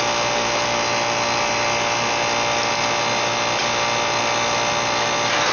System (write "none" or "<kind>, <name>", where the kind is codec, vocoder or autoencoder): none